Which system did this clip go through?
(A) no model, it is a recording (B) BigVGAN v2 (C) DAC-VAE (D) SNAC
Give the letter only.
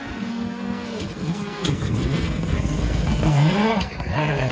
D